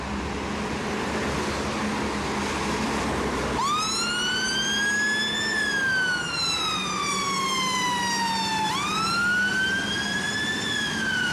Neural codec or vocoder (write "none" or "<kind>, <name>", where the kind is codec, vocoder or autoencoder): none